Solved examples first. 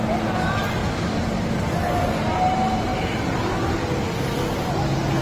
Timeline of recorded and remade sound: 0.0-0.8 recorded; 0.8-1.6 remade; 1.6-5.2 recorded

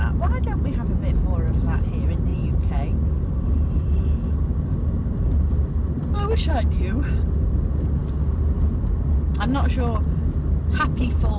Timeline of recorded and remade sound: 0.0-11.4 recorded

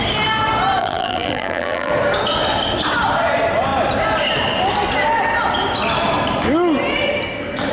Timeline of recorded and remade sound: 0.0-0.8 recorded; 0.8-1.9 remade; 1.9-7.7 recorded

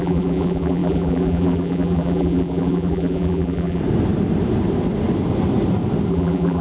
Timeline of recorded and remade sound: 0.0-3.8 remade; 3.8-6.1 recorded; 6.1-6.6 remade